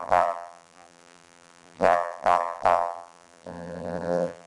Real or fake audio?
fake